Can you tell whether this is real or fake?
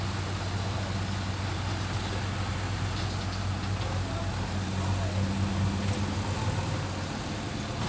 real